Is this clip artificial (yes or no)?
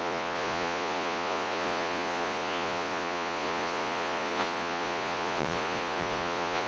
yes